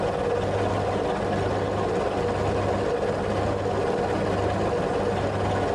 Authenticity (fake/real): real